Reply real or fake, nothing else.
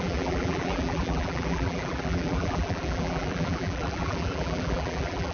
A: fake